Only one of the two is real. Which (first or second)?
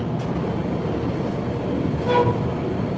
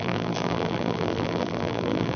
first